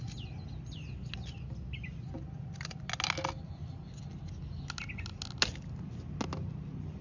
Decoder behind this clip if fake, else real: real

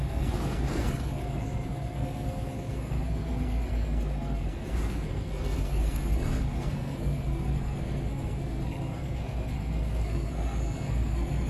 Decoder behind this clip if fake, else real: fake, codec, SNAC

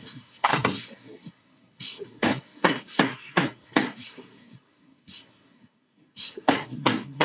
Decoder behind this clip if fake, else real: fake, codec, SNAC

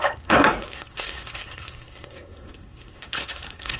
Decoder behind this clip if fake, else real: fake, codec, SNAC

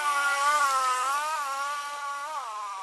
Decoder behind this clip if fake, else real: real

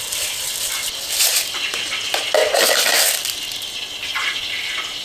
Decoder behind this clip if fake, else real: real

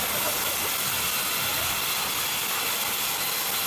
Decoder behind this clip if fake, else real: real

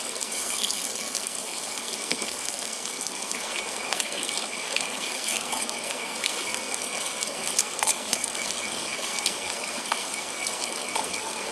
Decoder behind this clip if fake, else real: fake, codec, SNAC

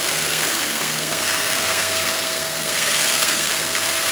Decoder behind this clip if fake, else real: fake, codec, SNAC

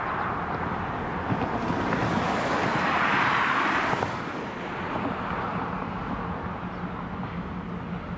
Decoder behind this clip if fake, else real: real